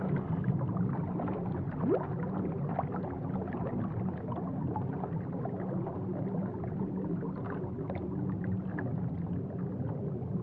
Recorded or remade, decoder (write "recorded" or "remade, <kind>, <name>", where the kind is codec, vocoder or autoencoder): recorded